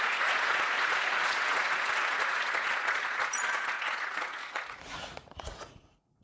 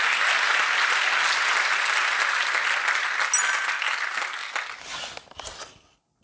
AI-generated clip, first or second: first